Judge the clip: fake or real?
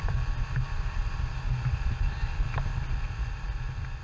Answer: real